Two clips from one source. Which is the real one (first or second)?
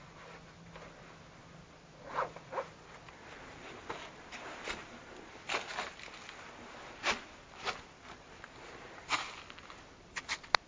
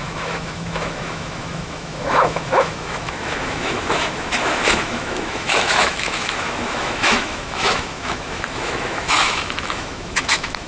first